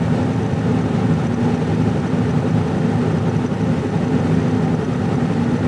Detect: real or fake real